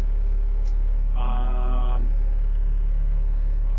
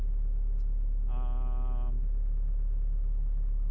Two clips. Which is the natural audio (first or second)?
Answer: second